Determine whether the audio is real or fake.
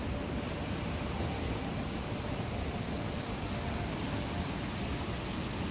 real